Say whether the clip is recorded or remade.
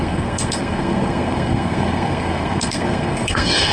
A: remade